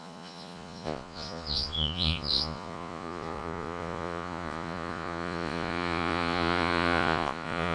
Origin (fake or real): fake